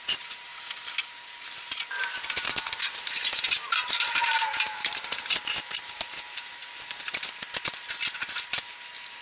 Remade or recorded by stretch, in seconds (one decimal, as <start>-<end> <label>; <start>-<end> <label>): 0.0-0.5 remade; 0.5-1.1 recorded; 1.1-9.2 remade